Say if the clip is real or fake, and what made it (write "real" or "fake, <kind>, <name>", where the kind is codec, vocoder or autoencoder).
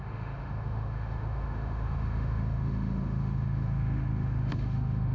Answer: fake, autoencoder, DAC-VAE